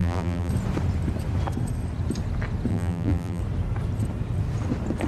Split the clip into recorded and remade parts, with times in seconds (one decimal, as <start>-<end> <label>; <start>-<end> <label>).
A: 0.0-0.5 remade; 0.5-2.7 recorded; 2.7-3.4 remade; 3.4-5.1 recorded